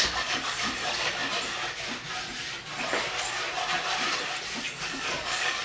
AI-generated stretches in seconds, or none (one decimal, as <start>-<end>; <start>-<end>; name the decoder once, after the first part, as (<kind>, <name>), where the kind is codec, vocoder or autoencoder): 0.0-1.2 (codec, DAC); 4.6-5.6